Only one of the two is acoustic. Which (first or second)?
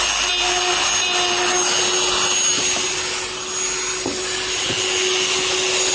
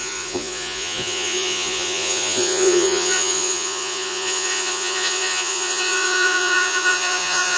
first